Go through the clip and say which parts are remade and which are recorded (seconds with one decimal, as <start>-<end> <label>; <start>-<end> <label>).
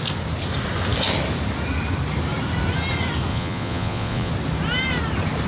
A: 0.0-3.3 recorded; 3.3-4.3 remade; 4.3-5.5 recorded